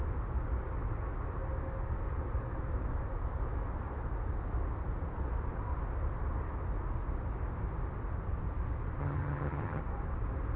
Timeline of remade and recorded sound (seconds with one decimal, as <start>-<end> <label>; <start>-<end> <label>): 0.0-9.0 recorded; 9.0-9.8 remade; 9.8-10.6 recorded